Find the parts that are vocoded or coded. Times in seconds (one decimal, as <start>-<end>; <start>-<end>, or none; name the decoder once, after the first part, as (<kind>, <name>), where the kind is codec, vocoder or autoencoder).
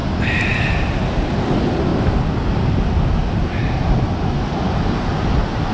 none